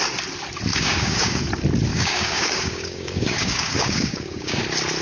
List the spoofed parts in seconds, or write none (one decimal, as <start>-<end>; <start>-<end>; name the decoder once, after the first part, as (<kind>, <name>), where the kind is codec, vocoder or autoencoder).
0.7-1.4 (codec, DAC); 1.9-4.6